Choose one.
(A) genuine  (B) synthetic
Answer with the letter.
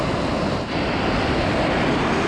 A